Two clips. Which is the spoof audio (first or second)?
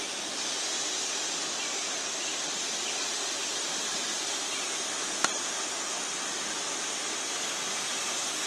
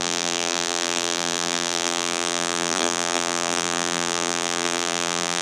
second